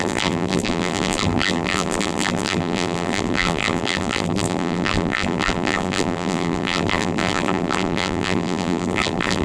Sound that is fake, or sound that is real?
fake